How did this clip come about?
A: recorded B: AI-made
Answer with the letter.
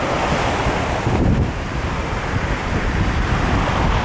B